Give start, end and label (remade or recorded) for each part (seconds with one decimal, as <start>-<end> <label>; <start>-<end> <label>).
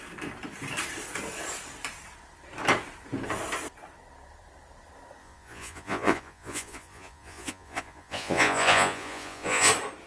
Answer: 0.0-5.2 recorded; 5.2-9.7 remade; 9.7-10.1 recorded